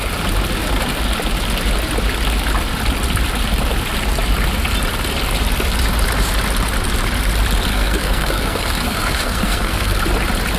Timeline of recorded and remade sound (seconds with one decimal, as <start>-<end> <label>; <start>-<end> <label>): 0.0-7.7 recorded; 7.7-10.0 remade; 10.0-10.6 recorded